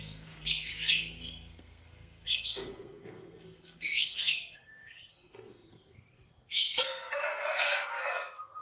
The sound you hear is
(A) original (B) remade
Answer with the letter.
B